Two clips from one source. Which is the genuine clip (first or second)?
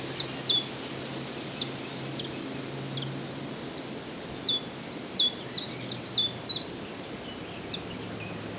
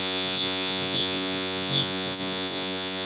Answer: first